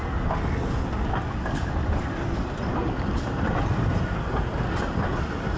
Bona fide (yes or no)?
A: yes